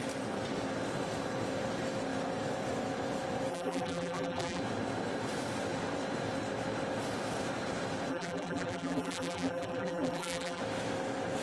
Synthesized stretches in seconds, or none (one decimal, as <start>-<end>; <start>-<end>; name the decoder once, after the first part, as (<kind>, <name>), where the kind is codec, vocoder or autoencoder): 3.5-4.6 (vocoder, BigVGAN v2); 8.1-10.6